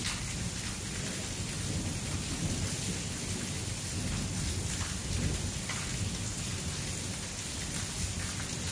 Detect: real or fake real